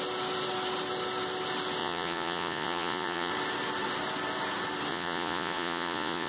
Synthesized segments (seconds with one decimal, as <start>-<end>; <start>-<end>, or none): 1.8-3.3; 4.9-6.3